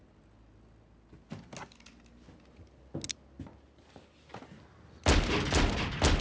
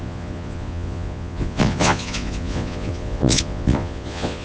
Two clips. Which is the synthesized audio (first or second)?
second